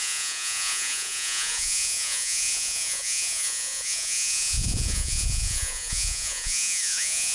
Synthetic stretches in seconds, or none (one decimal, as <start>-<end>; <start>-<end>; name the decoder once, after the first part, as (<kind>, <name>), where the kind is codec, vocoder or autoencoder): 0.0-7.3 (vocoder, Vocos)